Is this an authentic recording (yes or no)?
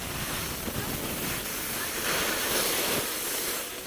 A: yes